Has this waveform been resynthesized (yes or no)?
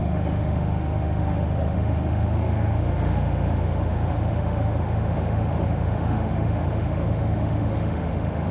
yes